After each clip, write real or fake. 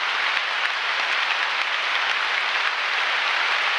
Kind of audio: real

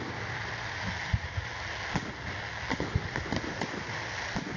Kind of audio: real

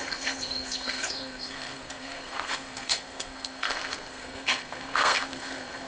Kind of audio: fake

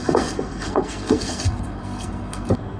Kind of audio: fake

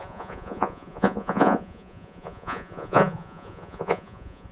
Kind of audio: fake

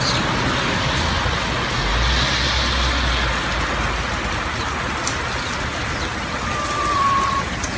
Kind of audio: real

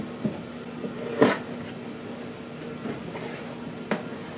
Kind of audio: real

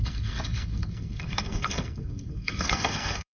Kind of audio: fake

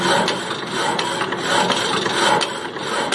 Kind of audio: real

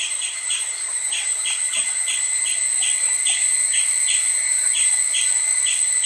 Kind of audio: real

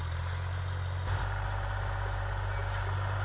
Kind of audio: real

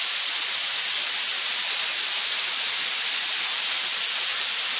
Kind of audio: real